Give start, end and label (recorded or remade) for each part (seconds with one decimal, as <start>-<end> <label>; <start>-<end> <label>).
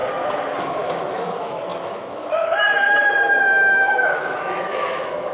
0.0-0.6 recorded; 0.6-5.3 remade